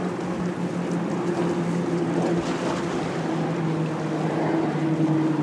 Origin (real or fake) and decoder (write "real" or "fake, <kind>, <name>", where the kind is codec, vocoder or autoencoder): real